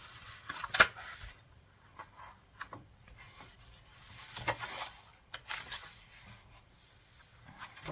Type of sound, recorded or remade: remade